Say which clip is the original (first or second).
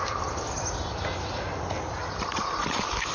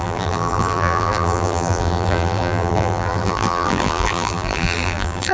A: first